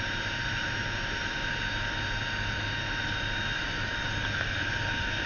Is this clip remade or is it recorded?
recorded